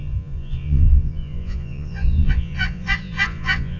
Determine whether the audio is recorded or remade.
remade